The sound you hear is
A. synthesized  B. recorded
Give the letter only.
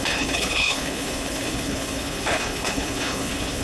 A